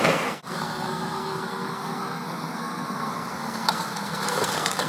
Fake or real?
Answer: fake